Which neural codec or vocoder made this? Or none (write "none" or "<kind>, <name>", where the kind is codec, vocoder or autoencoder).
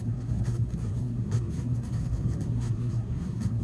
codec, SNAC